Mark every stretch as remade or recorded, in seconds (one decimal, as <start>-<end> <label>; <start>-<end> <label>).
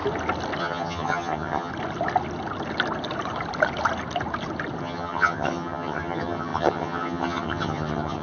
0.0-0.6 recorded; 0.6-1.7 remade; 1.7-4.8 recorded; 4.8-8.2 remade